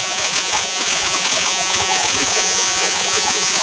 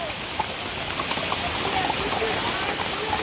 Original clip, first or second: second